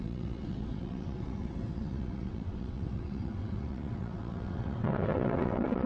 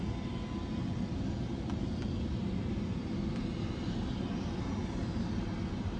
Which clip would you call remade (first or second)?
first